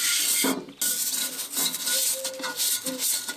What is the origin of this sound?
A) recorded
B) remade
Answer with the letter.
A